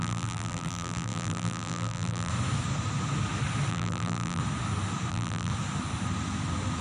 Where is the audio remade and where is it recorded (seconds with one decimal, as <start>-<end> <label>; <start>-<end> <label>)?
0.0-2.3 remade; 2.3-3.7 recorded; 3.7-4.4 remade; 4.4-5.1 recorded; 5.1-5.5 remade; 5.5-6.8 recorded